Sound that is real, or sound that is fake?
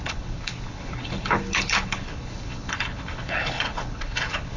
fake